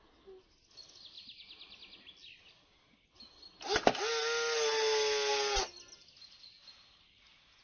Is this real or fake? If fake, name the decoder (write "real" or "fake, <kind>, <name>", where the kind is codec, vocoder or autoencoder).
real